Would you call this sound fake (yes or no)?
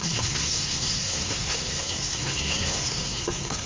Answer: yes